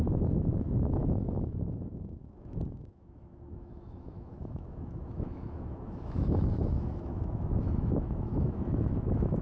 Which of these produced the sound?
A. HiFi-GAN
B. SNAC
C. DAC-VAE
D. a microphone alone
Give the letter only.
C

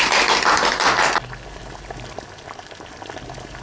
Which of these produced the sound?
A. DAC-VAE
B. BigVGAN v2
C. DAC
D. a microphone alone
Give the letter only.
D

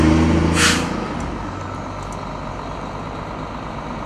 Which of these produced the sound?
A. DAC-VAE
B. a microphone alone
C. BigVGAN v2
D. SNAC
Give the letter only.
B